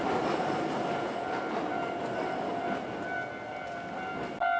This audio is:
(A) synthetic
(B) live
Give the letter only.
B